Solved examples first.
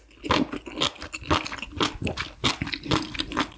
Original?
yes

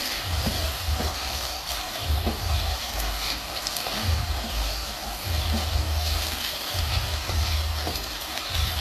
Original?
no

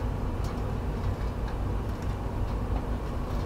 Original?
yes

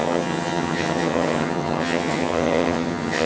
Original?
no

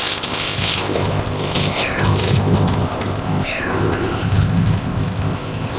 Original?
no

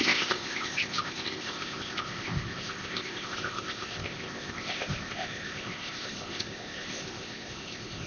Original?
no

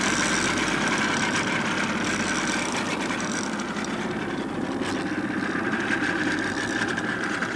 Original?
yes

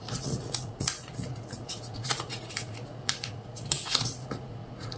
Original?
no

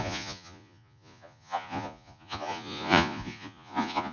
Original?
no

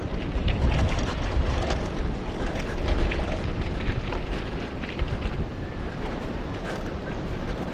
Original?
no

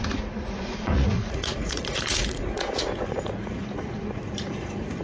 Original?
no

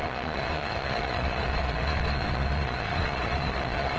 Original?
no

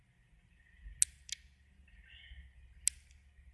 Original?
yes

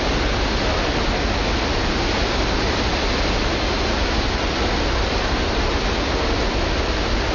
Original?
yes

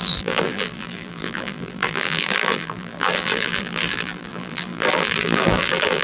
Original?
no